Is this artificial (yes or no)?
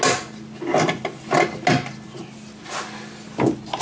no